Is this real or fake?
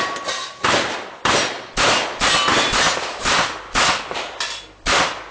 real